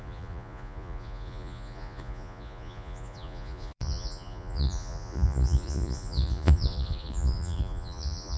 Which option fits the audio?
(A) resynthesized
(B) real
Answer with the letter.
A